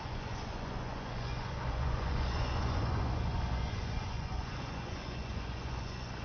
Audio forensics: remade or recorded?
remade